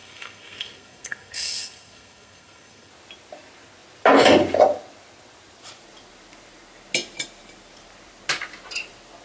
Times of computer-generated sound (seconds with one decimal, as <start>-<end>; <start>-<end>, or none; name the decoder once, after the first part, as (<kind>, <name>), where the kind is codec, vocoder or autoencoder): 0.0-2.9 (codec, SNAC)